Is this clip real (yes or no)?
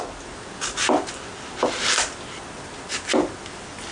yes